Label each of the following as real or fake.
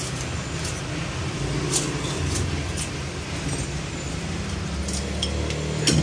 real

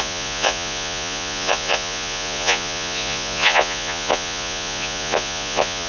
fake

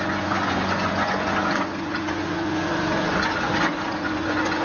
fake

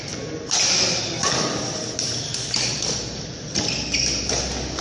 real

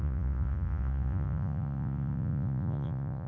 fake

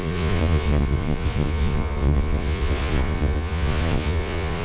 fake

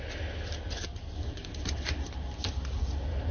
real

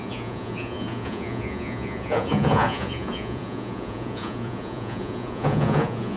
fake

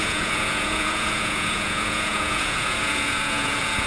fake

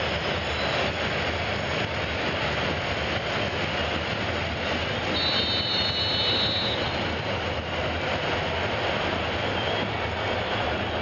real